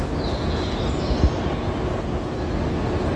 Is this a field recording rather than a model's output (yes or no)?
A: yes